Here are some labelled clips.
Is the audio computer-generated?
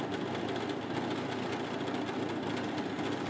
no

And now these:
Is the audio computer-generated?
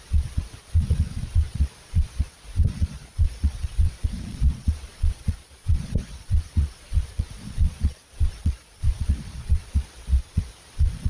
yes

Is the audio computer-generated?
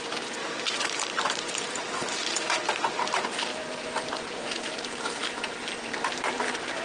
yes